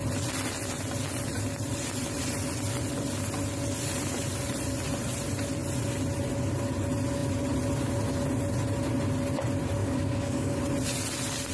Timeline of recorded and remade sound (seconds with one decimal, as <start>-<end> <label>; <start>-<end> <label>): 0.0-9.8 recorded; 9.8-10.6 remade; 10.6-11.5 recorded